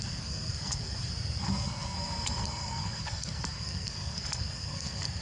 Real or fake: fake